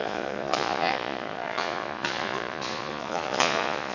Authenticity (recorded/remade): remade